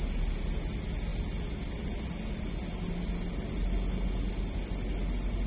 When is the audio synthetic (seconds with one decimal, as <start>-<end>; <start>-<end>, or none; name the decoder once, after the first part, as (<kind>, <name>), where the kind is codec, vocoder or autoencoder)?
none